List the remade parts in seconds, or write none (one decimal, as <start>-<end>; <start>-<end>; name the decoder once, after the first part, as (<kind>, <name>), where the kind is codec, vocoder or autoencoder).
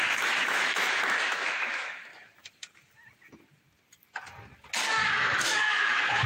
0.0-2.1 (autoencoder, DAC-VAE); 5.1-6.3